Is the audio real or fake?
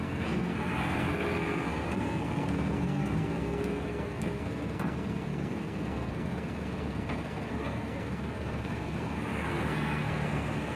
fake